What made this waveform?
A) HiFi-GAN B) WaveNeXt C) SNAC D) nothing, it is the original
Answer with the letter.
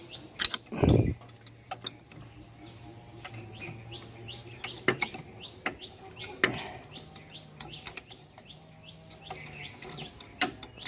D